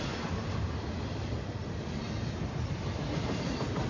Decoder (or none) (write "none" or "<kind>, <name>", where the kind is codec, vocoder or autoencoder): none